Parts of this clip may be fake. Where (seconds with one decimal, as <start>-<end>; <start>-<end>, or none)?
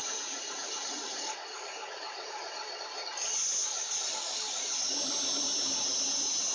0.0-2.6